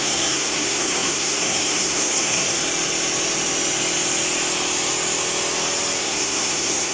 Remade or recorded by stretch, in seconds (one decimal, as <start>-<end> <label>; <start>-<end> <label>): 0.0-2.6 remade; 2.6-6.0 recorded; 6.0-6.9 remade